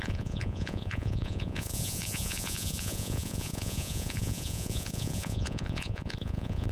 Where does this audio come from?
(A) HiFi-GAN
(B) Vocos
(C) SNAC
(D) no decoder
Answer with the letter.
B